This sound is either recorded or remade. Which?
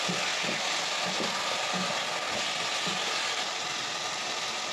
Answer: recorded